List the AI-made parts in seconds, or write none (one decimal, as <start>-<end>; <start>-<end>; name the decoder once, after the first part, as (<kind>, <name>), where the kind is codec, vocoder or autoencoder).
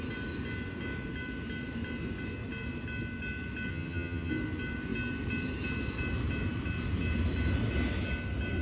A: 3.7-4.3 (vocoder, HiFi-GAN)